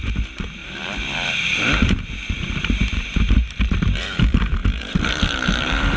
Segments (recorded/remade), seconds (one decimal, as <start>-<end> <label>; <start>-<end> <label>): 0.0-6.0 remade